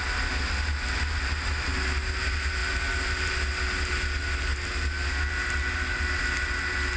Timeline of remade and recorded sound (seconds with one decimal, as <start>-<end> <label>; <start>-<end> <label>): 0.0-7.0 recorded